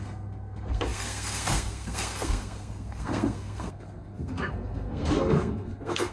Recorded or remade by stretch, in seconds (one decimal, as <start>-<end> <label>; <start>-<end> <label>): 0.0-6.1 remade